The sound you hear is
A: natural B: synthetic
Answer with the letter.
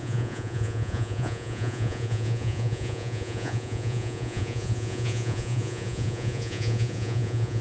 B